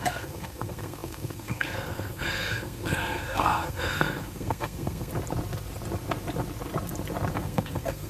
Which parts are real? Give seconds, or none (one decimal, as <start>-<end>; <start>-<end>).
5.1-7.3